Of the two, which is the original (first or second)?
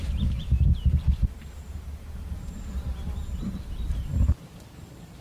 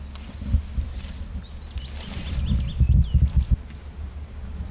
second